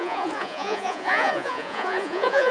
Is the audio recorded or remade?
remade